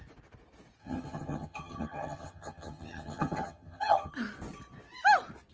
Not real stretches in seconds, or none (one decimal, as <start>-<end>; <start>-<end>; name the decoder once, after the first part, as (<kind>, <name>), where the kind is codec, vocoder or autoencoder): 0.8-4.1 (vocoder, HiFi-GAN)